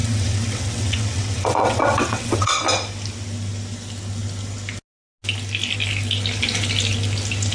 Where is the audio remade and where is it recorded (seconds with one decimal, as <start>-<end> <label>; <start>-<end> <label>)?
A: 0.0-2.6 remade; 2.6-7.5 recorded